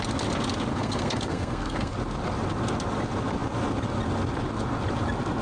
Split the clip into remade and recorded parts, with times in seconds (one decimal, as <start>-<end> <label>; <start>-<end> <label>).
0.0-0.7 recorded; 0.7-1.9 remade; 1.9-5.4 recorded

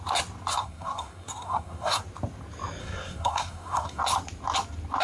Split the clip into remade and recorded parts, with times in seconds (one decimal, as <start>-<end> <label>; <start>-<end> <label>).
0.0-0.5 recorded; 0.5-2.0 remade; 2.0-2.8 recorded; 2.8-4.0 remade; 4.0-5.0 recorded

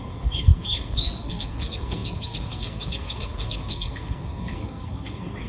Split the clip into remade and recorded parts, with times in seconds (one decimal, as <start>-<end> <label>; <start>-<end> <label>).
0.0-5.5 remade

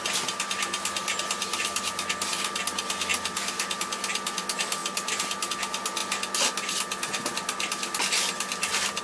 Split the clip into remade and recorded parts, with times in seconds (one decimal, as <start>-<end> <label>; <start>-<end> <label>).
0.0-9.0 recorded